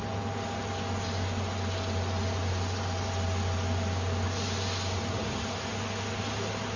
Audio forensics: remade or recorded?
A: recorded